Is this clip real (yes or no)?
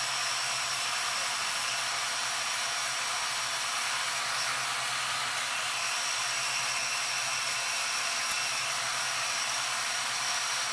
yes